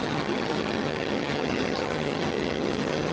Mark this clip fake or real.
fake